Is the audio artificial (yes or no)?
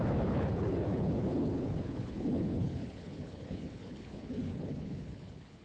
yes